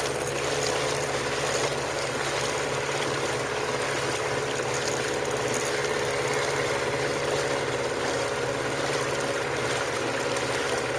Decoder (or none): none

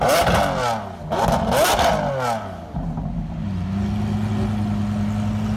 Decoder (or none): none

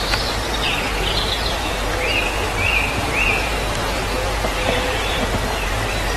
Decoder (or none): vocoder, BigVGAN v2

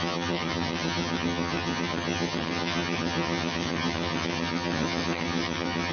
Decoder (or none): vocoder, HiFi-GAN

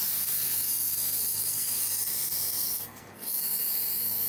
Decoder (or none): codec, SNAC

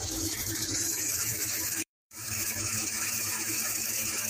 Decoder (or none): autoencoder, DAC-VAE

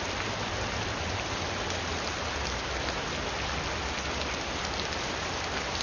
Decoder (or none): none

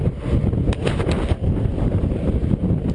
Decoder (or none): none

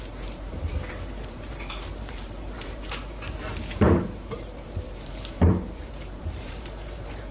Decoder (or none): vocoder, BigVGAN v2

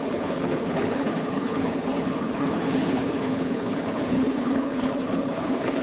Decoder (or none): codec, HILCodec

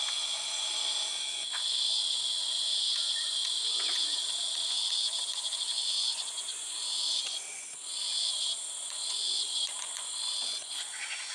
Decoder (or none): vocoder, Vocos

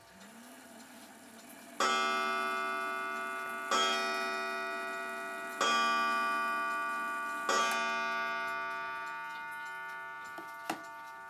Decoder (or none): none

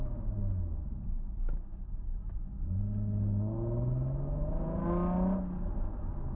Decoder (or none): none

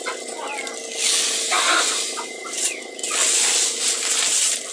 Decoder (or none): none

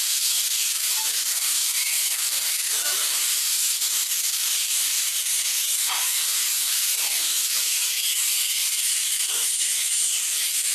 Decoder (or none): codec, DAC